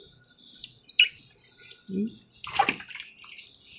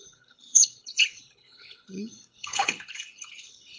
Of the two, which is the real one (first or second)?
first